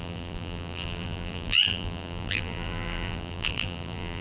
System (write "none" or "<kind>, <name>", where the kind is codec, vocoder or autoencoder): vocoder, BigVGAN v2